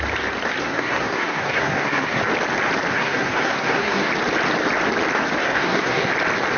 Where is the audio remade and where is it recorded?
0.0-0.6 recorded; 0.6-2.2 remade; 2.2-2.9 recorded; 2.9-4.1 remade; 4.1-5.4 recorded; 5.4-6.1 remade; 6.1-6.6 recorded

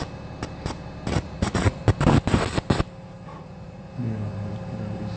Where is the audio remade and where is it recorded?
0.0-1.1 recorded; 1.1-1.8 remade; 1.8-3.3 recorded; 3.3-3.9 remade; 3.9-5.2 recorded

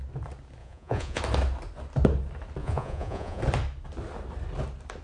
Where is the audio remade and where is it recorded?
0.0-0.6 recorded; 0.6-1.2 remade; 1.2-2.6 recorded; 2.6-3.4 remade; 3.4-5.0 recorded

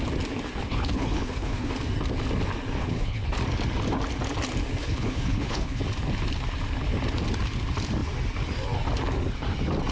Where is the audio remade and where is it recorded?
0.0-0.6 recorded; 0.6-1.7 remade; 1.7-2.8 recorded; 2.8-3.3 remade; 3.3-4.8 recorded; 4.8-5.8 remade; 5.8-9.9 recorded

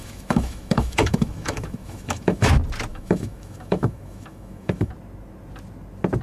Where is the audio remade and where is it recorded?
0.0-2.5 remade; 2.5-2.9 recorded; 2.9-4.9 remade; 4.9-6.2 recorded